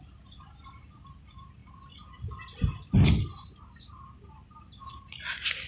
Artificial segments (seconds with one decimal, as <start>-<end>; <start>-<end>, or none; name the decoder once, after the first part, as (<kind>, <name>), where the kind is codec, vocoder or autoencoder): none